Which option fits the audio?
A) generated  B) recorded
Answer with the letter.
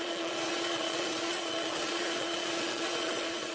A